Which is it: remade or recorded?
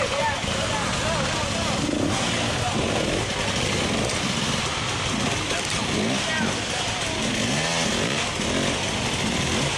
recorded